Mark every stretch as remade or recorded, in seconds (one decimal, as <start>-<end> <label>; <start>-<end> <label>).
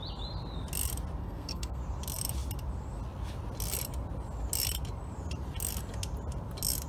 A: 0.0-1.2 recorded; 1.2-1.8 remade; 1.8-6.9 recorded